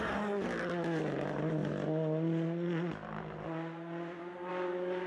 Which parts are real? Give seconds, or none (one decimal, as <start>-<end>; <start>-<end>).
0.0-5.1